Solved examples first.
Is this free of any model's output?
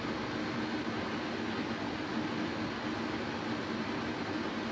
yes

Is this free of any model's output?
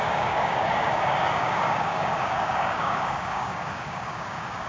no